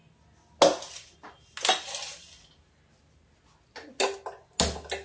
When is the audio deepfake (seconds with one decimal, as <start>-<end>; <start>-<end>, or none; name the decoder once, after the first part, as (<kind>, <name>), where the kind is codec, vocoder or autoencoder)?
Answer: none